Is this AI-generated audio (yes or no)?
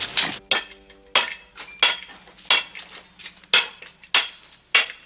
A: no